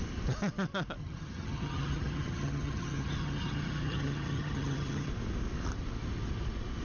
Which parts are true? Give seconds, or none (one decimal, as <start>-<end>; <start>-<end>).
0.0-1.0; 5.1-6.8